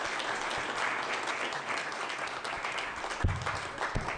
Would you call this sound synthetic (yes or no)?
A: no